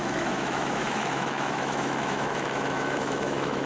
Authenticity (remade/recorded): remade